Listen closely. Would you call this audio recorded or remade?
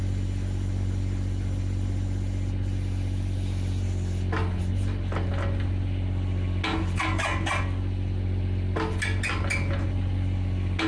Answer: recorded